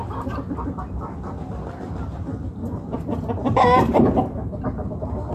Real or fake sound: real